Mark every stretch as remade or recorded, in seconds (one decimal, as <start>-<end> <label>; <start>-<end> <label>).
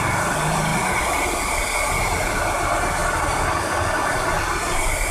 0.0-5.1 recorded